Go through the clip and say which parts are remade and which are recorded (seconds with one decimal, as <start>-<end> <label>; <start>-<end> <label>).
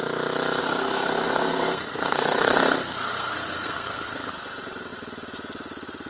0.0-0.6 recorded; 0.6-4.3 remade; 4.3-6.1 recorded